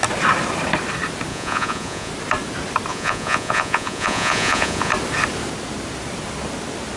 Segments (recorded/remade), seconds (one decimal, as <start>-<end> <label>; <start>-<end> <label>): 0.0-1.3 recorded; 1.3-2.1 remade; 2.1-2.9 recorded; 2.9-4.9 remade; 4.9-7.0 recorded